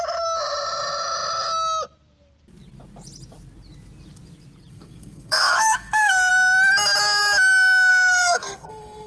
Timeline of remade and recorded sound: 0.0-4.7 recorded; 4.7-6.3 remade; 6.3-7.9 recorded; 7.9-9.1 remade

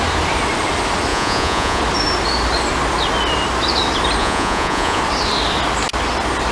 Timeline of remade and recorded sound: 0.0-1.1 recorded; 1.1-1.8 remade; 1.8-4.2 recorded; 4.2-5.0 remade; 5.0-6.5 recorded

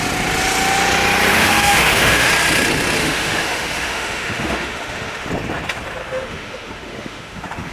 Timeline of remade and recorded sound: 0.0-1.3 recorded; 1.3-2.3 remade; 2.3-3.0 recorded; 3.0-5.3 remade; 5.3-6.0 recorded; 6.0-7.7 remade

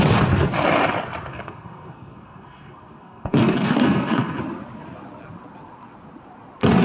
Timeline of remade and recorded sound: 0.0-1.3 recorded; 1.3-4.4 remade; 4.4-6.8 recorded

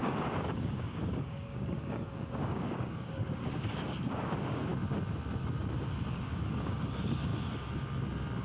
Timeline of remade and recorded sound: 0.0-4.7 remade; 4.7-6.2 recorded; 6.2-7.3 remade; 7.3-8.4 recorded